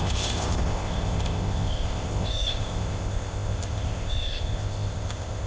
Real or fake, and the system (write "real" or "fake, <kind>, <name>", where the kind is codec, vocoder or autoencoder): fake, codec, ZipCodec